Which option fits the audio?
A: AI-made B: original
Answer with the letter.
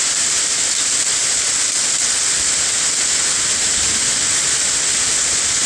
B